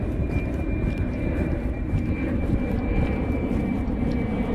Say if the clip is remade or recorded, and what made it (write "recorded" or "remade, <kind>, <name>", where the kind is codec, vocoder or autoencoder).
remade, vocoder, BigVGAN v2